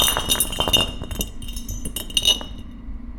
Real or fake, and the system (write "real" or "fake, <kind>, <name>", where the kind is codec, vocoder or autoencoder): real